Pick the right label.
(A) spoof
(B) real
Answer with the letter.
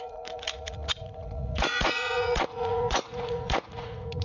A